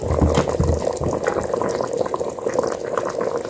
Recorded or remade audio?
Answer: recorded